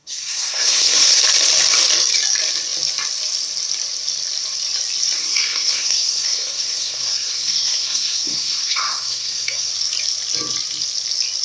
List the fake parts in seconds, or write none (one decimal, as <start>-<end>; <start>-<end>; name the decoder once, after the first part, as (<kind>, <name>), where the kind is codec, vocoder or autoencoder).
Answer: 0.0-1.2 (codec, SNAC); 5.2-9.7